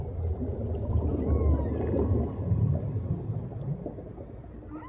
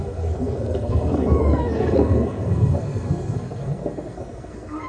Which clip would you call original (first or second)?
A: first